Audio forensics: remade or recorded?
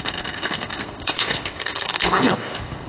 remade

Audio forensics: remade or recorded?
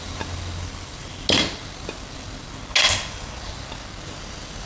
recorded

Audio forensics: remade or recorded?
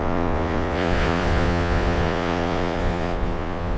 remade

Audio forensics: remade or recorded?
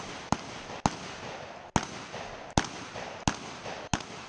recorded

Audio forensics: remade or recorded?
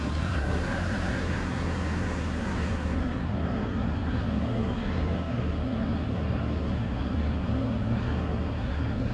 remade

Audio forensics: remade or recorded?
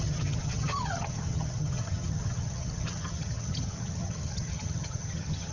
remade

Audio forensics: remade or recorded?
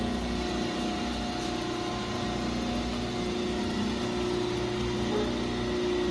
recorded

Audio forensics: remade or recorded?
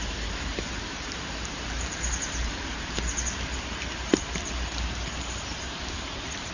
remade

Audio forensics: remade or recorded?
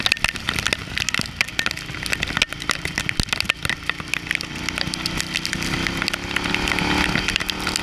recorded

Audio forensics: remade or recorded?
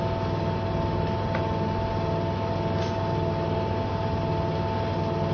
recorded